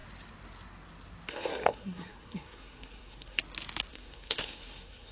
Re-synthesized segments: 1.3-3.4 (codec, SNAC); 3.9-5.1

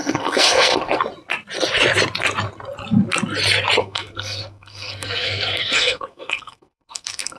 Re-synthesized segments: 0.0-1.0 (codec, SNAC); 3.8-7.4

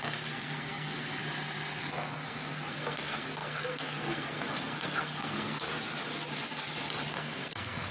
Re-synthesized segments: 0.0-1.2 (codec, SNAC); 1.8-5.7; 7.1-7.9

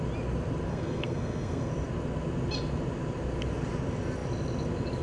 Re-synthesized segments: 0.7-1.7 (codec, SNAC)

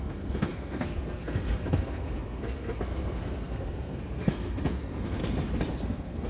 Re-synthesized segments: 0.0-5.2 (codec, SNAC); 5.7-6.3

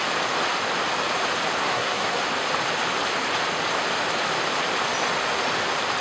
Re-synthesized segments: 1.6-2.2 (codec, SNAC)

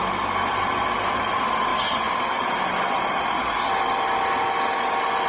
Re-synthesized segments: none